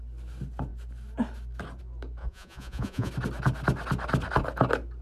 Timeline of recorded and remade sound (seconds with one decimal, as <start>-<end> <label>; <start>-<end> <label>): 0.0-2.2 recorded; 2.2-3.1 remade; 3.1-5.0 recorded